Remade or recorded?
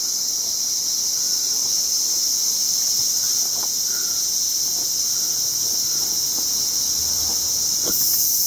recorded